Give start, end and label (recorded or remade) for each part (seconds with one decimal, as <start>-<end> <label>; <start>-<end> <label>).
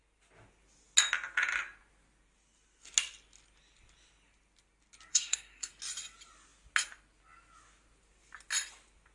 0.0-5.1 recorded; 5.1-5.7 remade; 5.7-9.1 recorded